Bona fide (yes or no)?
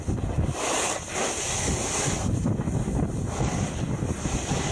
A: yes